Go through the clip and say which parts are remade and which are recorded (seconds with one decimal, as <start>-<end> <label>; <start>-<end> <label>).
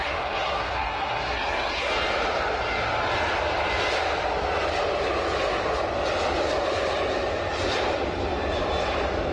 0.0-1.9 remade; 1.9-9.3 recorded